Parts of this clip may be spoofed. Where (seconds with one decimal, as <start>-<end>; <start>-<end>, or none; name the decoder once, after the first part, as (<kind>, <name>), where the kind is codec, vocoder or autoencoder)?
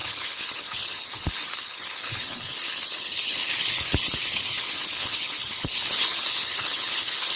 0.0-7.4 (codec, HILCodec)